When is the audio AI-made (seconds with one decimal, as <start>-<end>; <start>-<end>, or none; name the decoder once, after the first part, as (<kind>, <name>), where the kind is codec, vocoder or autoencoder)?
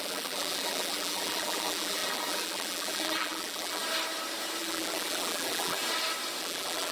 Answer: 0.0-3.8 (vocoder, BigVGAN v2); 4.6-5.8; 6.4-6.9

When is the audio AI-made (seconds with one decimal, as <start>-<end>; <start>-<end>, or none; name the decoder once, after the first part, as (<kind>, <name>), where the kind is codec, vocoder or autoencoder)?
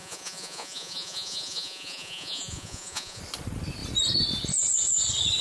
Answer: 0.0-3.2 (vocoder, Vocos)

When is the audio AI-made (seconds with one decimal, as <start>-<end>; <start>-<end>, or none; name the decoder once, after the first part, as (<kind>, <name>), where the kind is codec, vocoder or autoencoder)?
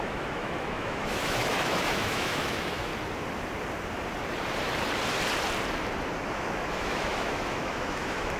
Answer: 0.0-2.9 (autoencoder, DAC-VAE); 6.3-8.4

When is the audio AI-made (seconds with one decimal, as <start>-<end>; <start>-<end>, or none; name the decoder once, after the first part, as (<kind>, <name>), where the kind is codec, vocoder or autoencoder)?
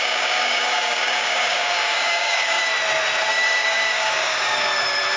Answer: 0.0-2.7 (codec, DAC); 3.3-4.7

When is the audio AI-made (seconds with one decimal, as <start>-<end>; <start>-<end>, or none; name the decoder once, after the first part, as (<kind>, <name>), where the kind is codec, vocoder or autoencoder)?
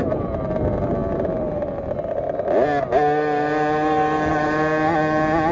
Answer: none